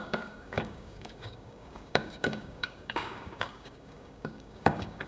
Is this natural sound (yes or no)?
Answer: no